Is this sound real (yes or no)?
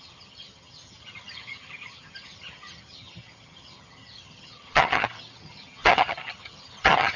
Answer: no